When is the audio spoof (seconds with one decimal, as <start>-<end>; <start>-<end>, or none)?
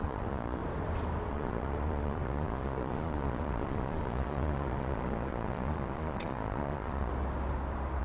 0.0-0.6; 1.3-7.1